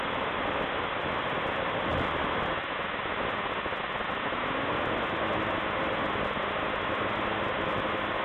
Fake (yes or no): no